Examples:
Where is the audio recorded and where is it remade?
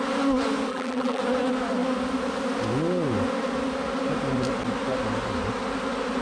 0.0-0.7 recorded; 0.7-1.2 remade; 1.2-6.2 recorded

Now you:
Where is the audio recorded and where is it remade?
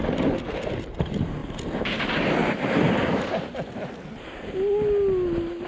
0.0-5.7 recorded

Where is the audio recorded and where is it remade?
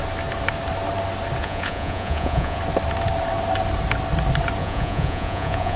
0.0-1.4 recorded; 1.4-2.6 remade; 2.6-4.6 recorded; 4.6-5.8 remade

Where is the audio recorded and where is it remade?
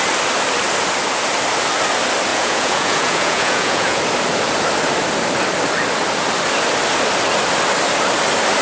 0.0-2.3 recorded; 2.3-4.0 remade; 4.0-8.6 recorded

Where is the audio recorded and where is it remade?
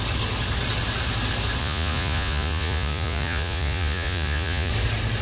0.0-1.6 recorded; 1.6-4.7 remade; 4.7-5.2 recorded